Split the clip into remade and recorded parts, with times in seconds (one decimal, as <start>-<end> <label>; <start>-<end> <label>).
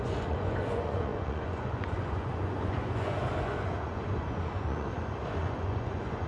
0.0-6.3 remade